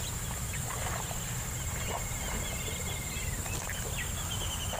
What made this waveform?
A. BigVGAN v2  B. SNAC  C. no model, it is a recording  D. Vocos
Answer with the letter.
C